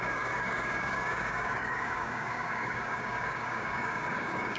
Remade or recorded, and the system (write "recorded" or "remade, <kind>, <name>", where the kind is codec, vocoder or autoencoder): remade, codec, DAC